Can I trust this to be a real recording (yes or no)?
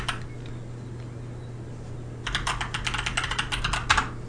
yes